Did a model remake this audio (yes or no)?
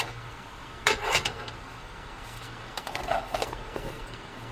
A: yes